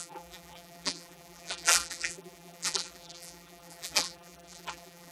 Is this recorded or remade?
remade